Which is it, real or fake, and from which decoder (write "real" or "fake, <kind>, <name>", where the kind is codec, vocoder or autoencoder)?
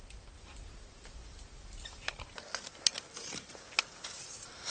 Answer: fake, vocoder, BigVGAN v2